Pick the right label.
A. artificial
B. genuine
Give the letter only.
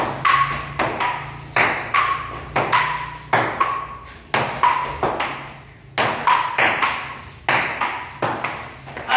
B